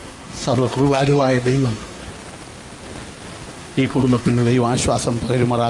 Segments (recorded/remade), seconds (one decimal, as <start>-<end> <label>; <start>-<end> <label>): 0.0-2.1 remade; 2.1-3.5 recorded; 3.5-4.5 remade; 4.5-5.7 recorded